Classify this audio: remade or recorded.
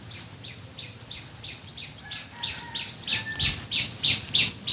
recorded